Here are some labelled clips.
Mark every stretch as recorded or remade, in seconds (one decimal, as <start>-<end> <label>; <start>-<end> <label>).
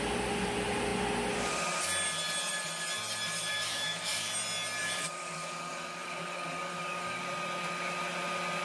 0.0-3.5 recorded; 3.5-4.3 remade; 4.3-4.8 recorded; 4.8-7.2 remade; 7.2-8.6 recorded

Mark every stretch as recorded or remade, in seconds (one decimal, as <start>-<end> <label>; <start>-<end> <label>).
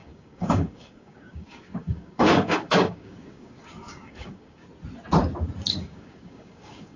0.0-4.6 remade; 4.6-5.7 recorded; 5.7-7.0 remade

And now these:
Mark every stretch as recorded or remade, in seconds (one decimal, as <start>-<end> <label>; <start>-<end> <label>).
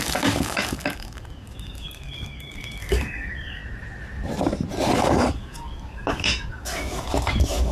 0.0-3.6 remade; 3.6-4.9 recorded; 4.9-7.7 remade